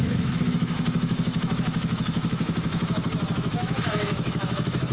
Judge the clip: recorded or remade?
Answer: remade